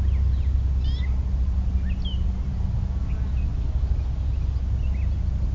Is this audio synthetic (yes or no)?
no